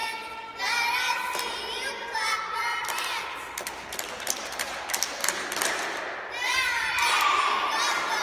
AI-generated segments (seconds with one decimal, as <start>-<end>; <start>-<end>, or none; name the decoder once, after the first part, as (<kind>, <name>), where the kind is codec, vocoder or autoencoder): none